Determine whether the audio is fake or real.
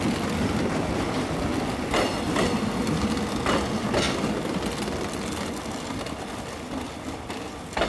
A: real